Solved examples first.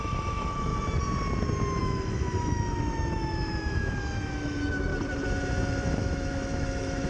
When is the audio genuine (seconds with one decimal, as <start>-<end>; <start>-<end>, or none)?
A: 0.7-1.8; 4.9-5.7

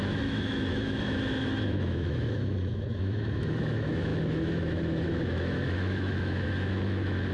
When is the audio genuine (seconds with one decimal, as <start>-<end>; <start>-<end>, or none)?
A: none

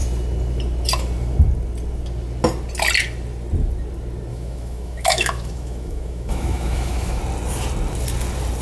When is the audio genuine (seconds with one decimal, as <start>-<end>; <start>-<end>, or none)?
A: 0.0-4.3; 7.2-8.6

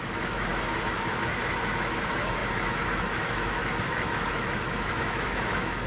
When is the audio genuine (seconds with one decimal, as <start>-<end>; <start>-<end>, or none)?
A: none